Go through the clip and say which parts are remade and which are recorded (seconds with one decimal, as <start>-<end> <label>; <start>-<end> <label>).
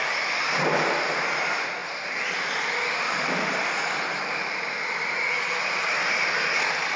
0.0-7.0 recorded